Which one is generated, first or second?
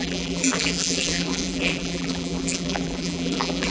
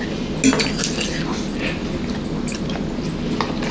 first